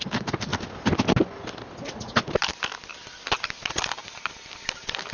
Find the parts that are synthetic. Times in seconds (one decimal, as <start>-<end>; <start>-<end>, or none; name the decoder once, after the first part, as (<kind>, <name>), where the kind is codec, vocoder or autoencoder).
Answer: none